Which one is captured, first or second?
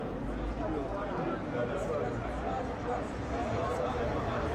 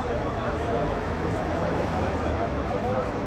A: first